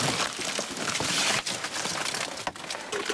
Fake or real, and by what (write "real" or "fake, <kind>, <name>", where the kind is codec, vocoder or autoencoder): real